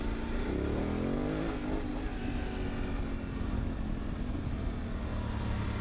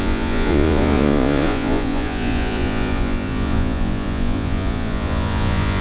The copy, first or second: second